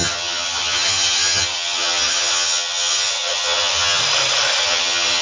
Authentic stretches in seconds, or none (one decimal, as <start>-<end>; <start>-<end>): 4.0-4.6